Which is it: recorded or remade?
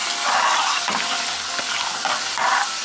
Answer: recorded